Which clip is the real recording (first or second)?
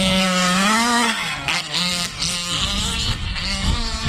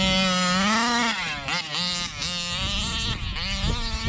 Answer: second